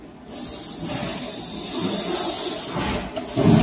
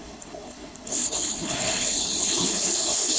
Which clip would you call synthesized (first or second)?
second